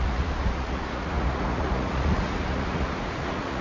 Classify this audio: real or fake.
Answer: fake